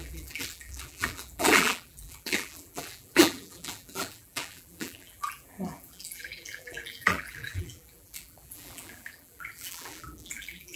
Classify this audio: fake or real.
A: fake